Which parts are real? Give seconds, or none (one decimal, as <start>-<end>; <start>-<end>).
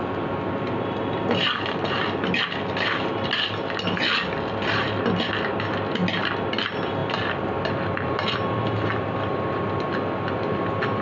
0.0-7.0; 7.6-11.0